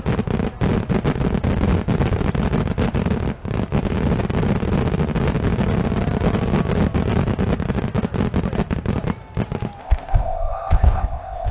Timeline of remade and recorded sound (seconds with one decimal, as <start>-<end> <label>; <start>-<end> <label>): 0.0-9.8 recorded; 9.8-11.5 remade